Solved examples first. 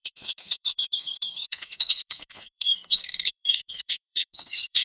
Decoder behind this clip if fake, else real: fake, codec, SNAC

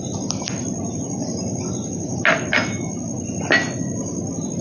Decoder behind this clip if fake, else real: real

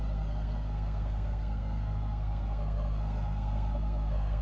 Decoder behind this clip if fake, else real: fake, codec, SNAC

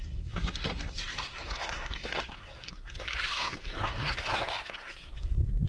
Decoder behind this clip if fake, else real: fake, codec, SNAC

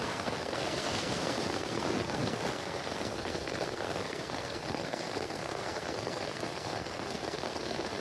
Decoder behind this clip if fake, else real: fake, codec, SNAC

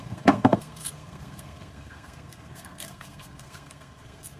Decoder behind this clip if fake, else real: fake, codec, SNAC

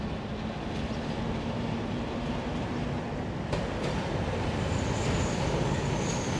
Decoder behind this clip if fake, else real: real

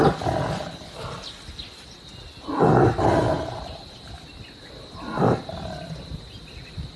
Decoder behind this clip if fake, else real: real